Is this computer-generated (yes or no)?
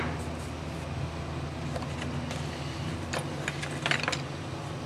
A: no